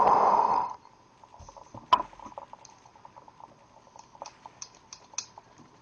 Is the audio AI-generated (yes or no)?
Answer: no